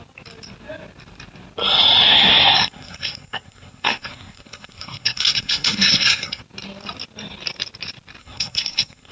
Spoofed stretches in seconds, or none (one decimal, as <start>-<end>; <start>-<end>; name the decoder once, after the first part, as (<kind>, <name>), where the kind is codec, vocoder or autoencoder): 2.1-6.4 (codec, SNAC); 8.2-9.1